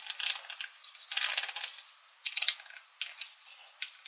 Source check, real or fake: real